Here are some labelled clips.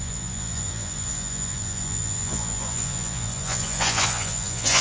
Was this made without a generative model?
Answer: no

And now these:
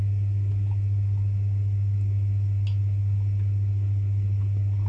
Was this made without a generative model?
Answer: yes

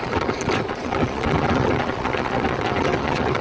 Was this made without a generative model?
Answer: no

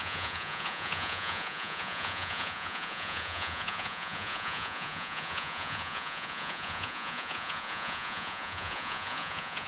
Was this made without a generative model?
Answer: no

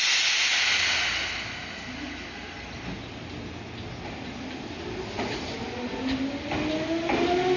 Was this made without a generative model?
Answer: yes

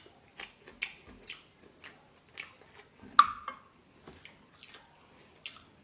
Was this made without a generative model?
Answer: yes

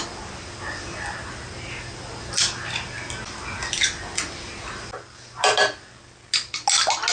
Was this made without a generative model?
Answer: yes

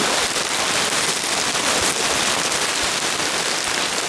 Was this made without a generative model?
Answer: yes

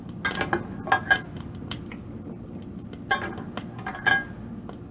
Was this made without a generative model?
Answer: yes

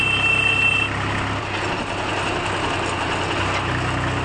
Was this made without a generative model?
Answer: yes